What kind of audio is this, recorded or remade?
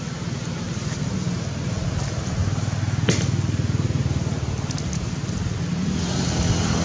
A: recorded